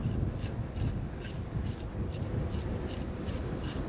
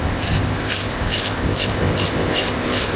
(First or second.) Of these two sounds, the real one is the first